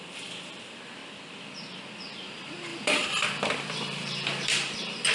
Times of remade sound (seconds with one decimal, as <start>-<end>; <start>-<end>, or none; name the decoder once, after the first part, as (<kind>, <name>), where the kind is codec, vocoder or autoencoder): 1.0-1.8 (vocoder, BigVGAN v2); 2.7-5.1